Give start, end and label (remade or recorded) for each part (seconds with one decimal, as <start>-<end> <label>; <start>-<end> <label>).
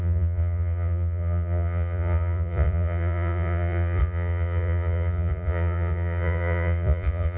0.0-7.4 remade